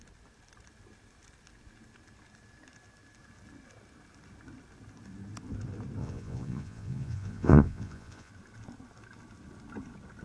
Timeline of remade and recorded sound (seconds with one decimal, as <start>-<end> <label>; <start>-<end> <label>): 0.0-6.0 recorded; 6.0-8.3 remade; 8.3-10.2 recorded